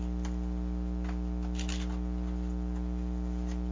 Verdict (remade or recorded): recorded